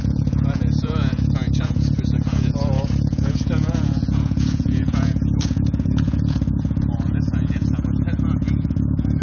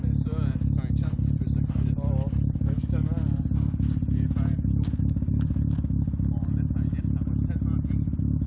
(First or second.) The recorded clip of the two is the second